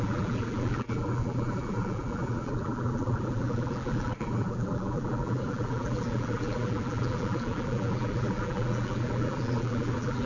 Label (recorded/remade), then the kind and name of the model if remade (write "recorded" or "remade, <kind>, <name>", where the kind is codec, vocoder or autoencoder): remade, vocoder, BigVGAN v2